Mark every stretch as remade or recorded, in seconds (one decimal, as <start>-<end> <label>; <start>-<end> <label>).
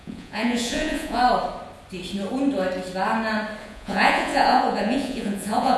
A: 0.0-1.2 remade; 1.2-3.6 recorded; 3.6-5.8 remade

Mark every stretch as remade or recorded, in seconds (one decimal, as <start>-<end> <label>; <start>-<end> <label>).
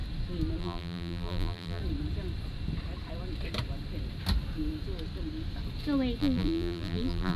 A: 0.0-0.6 recorded; 0.6-1.8 remade; 1.8-6.2 recorded; 6.2-7.4 remade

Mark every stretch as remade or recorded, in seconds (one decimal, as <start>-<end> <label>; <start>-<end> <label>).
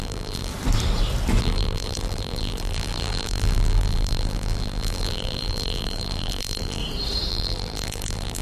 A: 0.0-0.5 remade; 0.5-1.4 recorded; 1.4-6.8 remade; 6.8-7.3 recorded; 7.3-8.4 remade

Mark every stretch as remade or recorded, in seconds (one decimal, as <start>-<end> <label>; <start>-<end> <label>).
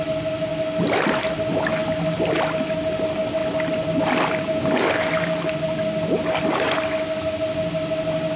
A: 0.0-8.4 recorded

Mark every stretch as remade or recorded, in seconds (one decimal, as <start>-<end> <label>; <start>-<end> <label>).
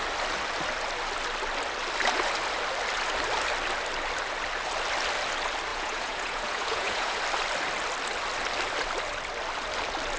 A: 0.0-5.7 recorded; 5.7-7.2 remade; 7.2-10.2 recorded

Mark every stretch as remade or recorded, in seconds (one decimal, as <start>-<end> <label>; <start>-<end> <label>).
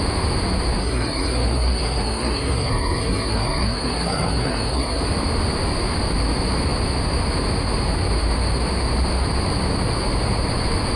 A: 0.0-0.8 recorded; 0.8-5.0 remade; 5.0-11.0 recorded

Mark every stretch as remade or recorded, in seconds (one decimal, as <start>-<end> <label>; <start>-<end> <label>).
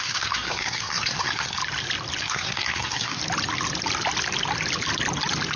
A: 0.0-1.6 remade; 1.6-2.2 recorded; 2.2-3.2 remade; 3.2-5.6 recorded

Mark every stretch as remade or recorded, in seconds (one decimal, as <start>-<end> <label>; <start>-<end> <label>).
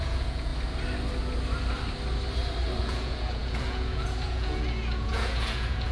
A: 0.0-0.5 remade; 0.5-2.8 recorded; 2.8-5.9 remade